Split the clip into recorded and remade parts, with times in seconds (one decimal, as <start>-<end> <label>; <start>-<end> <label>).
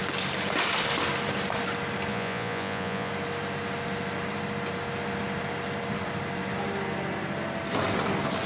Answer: 0.0-2.1 recorded; 2.1-3.1 remade; 3.1-8.5 recorded